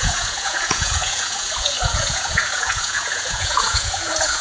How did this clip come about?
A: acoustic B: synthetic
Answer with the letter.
B